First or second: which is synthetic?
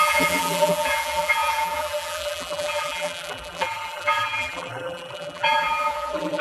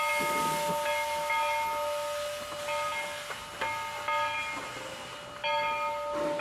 first